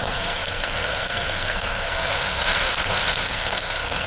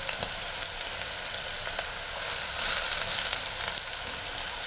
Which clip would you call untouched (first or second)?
second